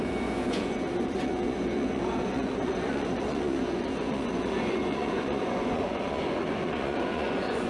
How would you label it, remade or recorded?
remade